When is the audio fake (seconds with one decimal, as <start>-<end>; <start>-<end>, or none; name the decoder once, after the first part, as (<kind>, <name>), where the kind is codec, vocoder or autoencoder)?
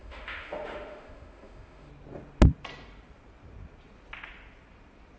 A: 0.0-1.9 (autoencoder, DAC-VAE)